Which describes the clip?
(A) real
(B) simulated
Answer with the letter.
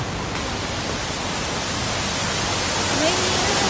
A